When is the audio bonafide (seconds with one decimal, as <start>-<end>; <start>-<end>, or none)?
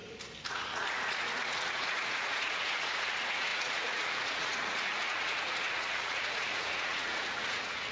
0.0-0.5